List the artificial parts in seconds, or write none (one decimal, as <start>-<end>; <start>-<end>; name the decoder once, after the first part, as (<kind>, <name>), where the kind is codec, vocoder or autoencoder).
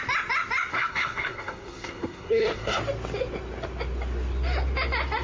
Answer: 0.7-2.8 (codec, SNAC)